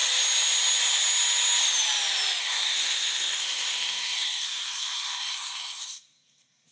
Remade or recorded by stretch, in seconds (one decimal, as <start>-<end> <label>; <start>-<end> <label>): 0.0-2.4 recorded; 2.4-6.7 remade